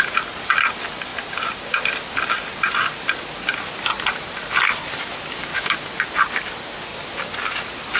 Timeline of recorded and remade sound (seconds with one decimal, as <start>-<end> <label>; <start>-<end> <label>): 0.0-8.0 recorded